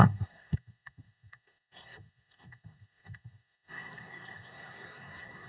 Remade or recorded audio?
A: remade